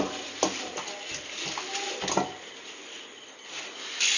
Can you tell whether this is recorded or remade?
recorded